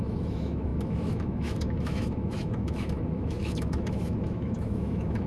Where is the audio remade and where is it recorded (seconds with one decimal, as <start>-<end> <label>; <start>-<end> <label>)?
0.0-5.3 remade